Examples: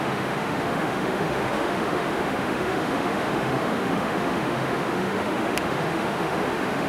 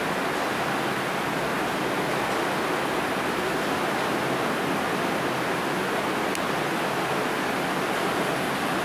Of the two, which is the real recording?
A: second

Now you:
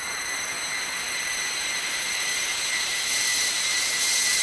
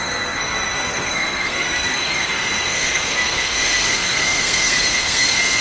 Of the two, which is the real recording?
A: first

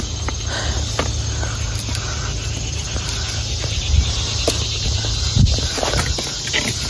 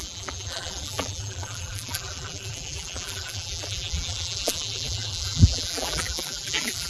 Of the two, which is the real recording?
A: first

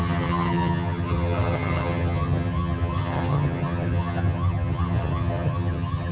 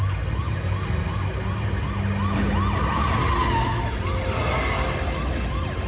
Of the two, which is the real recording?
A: second